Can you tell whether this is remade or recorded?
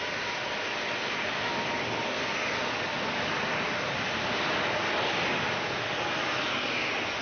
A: recorded